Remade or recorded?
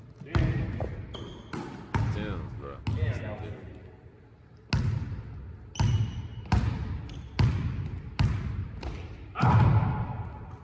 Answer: recorded